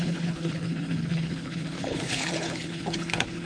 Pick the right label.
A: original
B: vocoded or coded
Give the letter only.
B